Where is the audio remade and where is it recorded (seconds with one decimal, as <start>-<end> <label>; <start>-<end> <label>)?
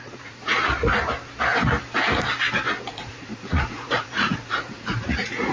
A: 0.0-0.9 remade; 0.9-2.9 recorded; 2.9-5.5 remade